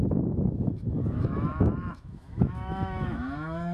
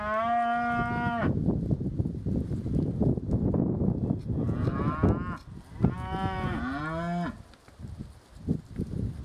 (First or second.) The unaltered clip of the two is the second